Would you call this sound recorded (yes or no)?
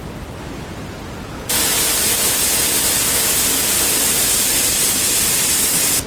no